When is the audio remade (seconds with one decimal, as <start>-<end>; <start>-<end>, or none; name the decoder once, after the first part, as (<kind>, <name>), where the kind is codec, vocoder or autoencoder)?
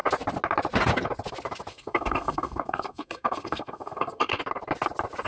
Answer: 1.7-4.4 (codec, SNAC)